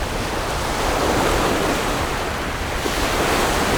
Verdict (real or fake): real